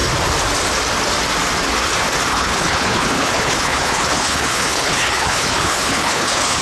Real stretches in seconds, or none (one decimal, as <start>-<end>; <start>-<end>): 0.0-2.3